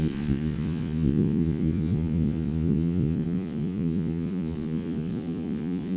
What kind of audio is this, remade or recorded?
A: remade